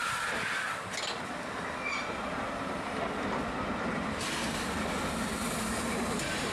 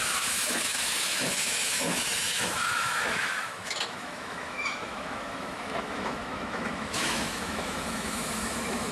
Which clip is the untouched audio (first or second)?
first